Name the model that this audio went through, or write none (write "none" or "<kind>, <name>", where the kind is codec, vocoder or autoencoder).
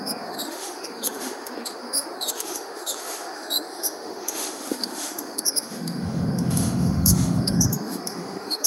autoencoder, DAC-VAE